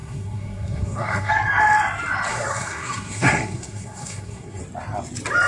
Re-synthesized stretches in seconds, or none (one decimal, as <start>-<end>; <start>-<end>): 0.0-1.3; 2.3-4.6